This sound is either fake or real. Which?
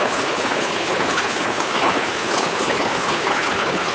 fake